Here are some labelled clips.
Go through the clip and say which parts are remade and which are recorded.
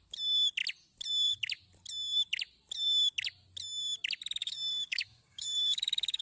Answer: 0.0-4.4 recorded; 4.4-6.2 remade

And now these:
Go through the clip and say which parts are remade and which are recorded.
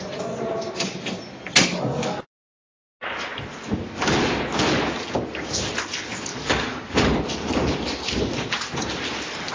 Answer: 0.0-1.7 recorded; 1.7-2.5 remade; 2.5-6.3 recorded; 6.3-7.2 remade; 7.2-9.5 recorded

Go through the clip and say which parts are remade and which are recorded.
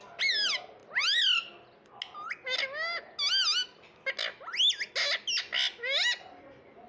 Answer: 0.0-6.9 recorded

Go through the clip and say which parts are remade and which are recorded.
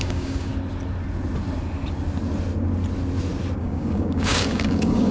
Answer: 0.0-0.5 remade; 0.5-3.6 recorded; 3.6-5.1 remade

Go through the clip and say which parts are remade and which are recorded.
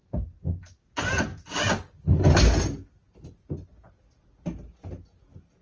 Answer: 0.0-5.6 recorded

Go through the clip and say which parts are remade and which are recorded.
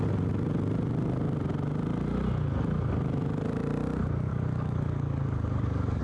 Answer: 0.0-4.3 recorded; 4.3-6.0 remade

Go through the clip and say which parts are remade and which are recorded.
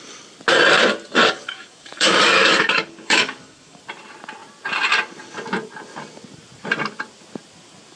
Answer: 0.0-1.2 recorded; 1.2-3.8 remade; 3.8-8.0 recorded